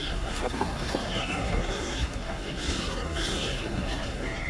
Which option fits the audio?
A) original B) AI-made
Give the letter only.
B